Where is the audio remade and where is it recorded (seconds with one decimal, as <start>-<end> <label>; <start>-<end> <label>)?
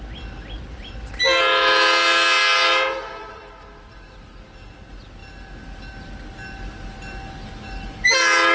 0.0-8.5 recorded